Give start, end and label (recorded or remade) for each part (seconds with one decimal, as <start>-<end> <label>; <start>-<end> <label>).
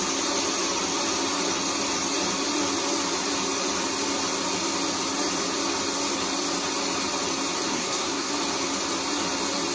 0.0-7.7 recorded; 7.7-8.3 remade; 8.3-9.7 recorded